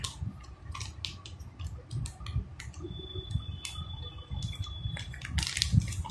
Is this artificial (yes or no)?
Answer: no